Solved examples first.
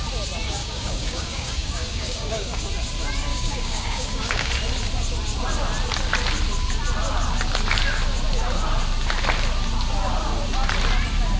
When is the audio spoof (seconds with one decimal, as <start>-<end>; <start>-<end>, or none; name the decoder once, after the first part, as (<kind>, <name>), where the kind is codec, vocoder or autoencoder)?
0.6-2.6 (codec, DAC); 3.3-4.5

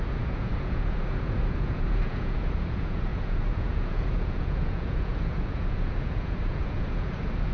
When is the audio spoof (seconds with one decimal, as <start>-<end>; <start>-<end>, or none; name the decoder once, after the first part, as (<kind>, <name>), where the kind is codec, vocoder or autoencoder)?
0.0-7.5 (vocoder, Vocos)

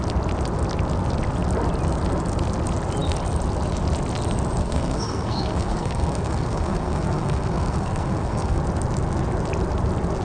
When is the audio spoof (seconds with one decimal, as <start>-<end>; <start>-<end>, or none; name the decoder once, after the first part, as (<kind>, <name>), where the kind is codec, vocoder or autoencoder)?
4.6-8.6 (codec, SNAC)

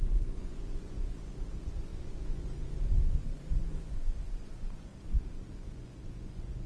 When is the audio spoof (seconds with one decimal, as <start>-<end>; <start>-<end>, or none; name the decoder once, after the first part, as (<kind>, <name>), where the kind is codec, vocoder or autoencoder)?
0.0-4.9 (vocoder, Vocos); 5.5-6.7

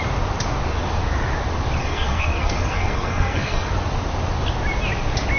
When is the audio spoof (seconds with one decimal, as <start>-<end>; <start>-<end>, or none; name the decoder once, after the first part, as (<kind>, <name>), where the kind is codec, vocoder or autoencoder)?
1.8-3.7 (codec, SNAC)